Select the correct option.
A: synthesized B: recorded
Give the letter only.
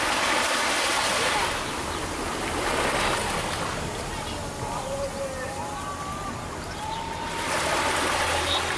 B